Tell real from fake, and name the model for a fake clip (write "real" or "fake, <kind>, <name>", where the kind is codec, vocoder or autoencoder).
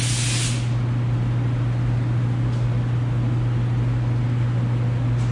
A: real